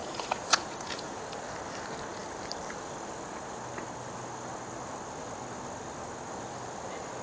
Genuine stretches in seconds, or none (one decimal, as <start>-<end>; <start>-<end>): 1.2-7.2